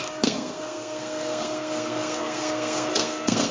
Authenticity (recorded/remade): remade